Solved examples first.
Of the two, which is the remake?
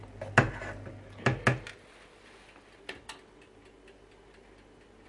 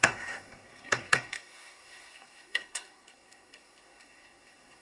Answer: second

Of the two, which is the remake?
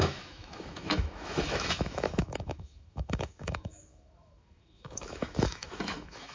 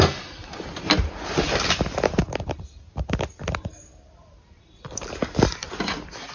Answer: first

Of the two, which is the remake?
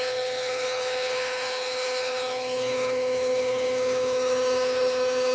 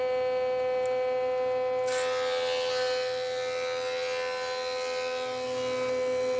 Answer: first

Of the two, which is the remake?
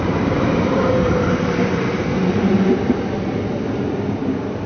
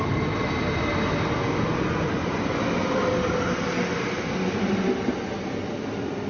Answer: first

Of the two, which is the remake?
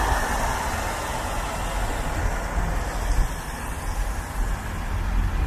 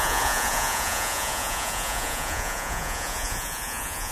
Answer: second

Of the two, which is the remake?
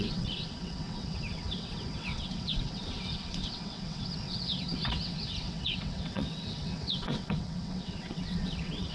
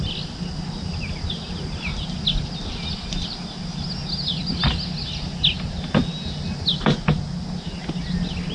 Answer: first